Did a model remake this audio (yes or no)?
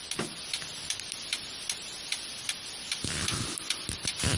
no